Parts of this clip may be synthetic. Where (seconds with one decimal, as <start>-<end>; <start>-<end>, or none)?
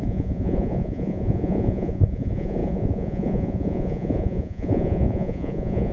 0.0-5.9